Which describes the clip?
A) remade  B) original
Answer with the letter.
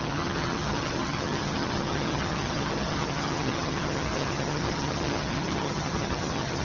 A